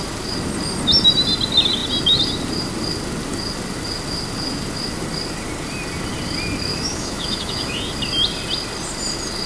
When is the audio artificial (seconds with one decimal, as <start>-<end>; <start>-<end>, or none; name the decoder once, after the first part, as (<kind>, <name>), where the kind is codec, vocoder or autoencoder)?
6.7-7.8 (autoencoder, DAC-VAE)